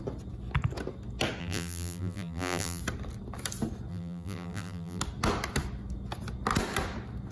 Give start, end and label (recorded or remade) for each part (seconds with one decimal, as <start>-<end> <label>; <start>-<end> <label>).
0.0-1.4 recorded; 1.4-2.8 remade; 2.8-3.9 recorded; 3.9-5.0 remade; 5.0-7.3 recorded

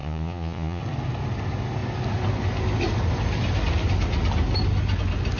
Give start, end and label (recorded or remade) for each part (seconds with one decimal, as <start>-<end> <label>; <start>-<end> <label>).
0.0-0.8 remade; 0.8-5.4 recorded

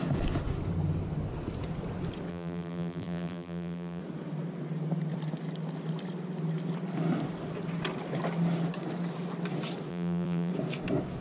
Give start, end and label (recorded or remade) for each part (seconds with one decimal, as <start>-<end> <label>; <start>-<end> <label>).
0.0-2.3 recorded; 2.3-4.0 remade; 4.0-9.9 recorded; 9.9-10.5 remade; 10.5-11.2 recorded

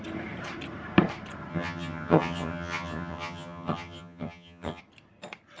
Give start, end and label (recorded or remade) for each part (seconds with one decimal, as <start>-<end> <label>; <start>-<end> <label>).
0.0-1.5 recorded; 1.5-4.8 remade; 4.8-5.6 recorded